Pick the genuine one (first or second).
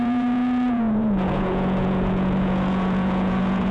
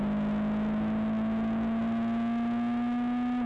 second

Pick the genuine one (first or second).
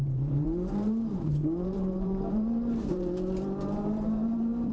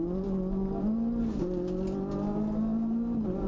second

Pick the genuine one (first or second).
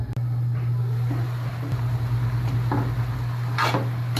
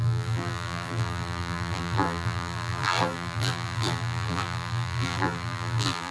first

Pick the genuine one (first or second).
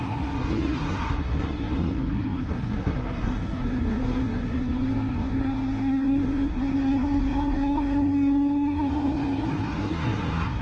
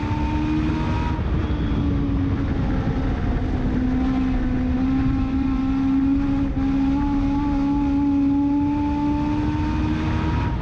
second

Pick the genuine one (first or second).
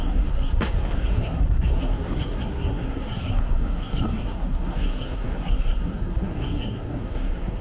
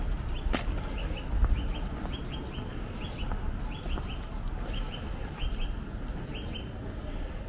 second